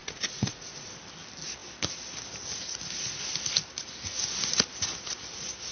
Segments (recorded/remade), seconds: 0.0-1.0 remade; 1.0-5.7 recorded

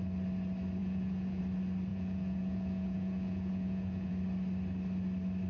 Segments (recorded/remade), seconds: 0.0-0.8 recorded; 0.8-1.4 remade; 1.4-1.9 recorded; 1.9-4.1 remade; 4.1-5.5 recorded